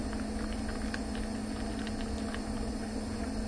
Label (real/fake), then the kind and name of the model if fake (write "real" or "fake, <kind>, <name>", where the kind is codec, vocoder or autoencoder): real